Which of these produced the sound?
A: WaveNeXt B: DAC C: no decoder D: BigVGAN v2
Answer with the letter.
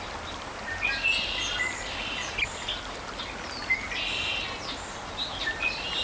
C